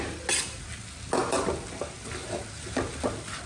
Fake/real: real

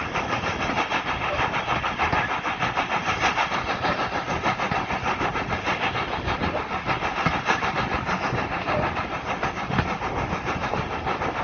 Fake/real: real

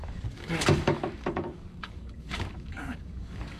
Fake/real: fake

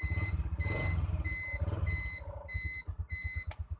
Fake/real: real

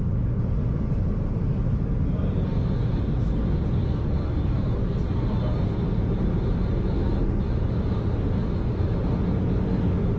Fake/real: real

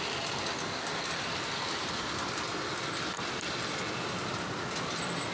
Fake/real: real